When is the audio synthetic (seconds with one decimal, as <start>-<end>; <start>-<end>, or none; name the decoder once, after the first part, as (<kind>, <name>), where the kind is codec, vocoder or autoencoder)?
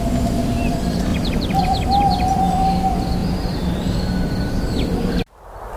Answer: 1.1-1.6 (vocoder, BigVGAN v2); 3.2-4.0